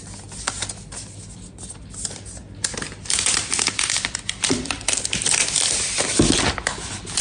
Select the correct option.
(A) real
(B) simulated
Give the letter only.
A